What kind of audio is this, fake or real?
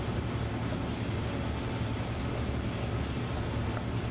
real